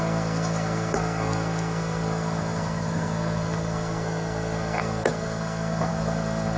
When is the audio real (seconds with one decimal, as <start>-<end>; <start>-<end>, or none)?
none

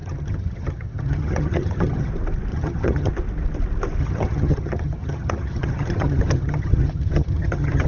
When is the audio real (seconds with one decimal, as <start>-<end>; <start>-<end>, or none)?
2.1-2.5; 3.1-4.0

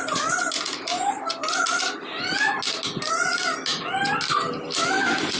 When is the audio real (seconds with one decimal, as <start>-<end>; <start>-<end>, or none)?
0.0-5.4

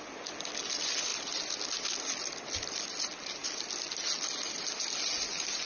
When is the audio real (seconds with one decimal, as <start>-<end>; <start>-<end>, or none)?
0.0-5.7

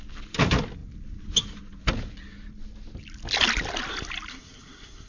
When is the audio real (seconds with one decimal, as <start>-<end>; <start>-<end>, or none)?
0.0-4.3

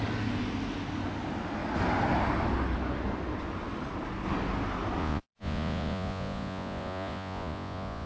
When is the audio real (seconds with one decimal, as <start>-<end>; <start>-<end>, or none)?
0.0-5.0

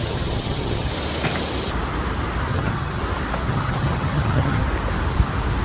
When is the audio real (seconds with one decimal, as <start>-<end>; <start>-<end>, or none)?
0.9-2.5; 3.0-3.5; 4.6-5.6

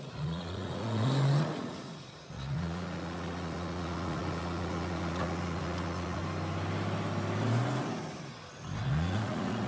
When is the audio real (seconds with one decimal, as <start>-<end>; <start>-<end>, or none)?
6.2-8.8